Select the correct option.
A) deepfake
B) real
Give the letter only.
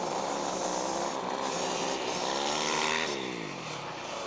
A